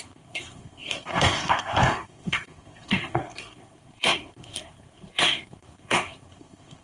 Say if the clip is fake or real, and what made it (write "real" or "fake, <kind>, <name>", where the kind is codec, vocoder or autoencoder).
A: fake, codec, SNAC